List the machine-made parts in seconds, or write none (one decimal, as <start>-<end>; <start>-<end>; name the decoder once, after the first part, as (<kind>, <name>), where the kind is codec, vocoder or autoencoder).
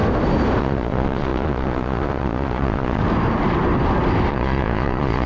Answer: 0.6-3.0 (vocoder, Vocos); 4.3-5.3